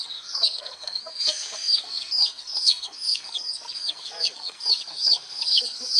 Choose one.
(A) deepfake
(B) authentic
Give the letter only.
A